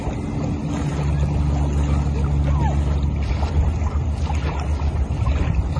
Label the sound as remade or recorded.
recorded